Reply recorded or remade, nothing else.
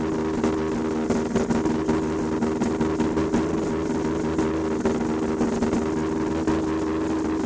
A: recorded